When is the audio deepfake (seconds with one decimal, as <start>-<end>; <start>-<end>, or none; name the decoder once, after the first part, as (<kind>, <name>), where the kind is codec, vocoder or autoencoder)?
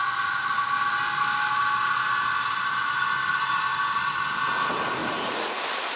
5.0-5.6 (vocoder, Vocos)